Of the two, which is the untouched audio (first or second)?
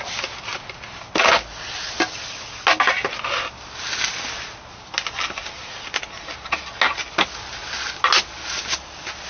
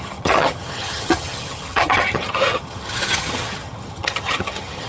first